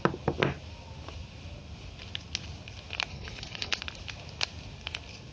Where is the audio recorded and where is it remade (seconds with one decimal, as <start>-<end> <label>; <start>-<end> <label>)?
0.0-3.1 recorded; 3.1-3.8 remade; 3.8-5.3 recorded